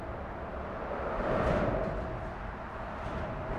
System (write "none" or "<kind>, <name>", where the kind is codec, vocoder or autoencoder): none